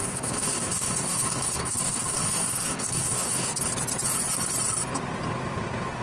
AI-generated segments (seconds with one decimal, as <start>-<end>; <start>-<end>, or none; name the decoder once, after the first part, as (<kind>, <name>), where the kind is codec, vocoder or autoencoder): 0.0-3.6 (codec, DAC)